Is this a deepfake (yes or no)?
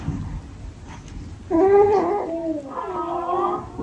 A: no